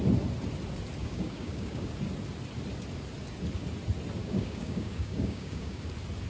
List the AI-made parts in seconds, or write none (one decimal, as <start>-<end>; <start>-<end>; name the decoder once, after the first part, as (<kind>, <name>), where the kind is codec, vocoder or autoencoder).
1.0-1.9 (codec, DAC); 4.2-5.8